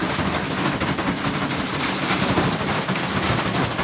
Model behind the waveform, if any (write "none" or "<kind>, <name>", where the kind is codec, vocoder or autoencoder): none